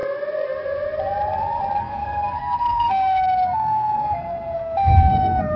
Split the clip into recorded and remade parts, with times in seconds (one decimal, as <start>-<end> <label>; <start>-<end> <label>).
0.0-1.8 recorded; 1.8-5.6 remade